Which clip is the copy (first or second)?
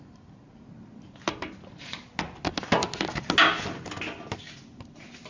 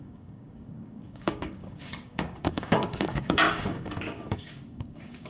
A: second